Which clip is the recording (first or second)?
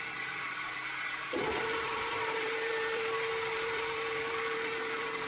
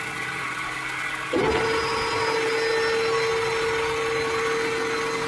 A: second